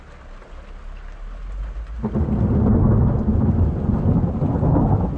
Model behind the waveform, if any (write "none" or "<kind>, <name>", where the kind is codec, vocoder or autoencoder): none